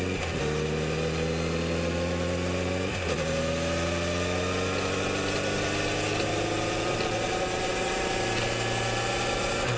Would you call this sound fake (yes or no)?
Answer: no